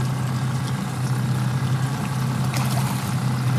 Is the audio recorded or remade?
recorded